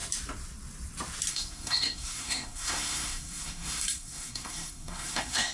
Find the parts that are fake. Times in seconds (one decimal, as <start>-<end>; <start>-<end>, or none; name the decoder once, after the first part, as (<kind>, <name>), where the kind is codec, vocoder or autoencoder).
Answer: 1.3-5.5 (codec, SNAC)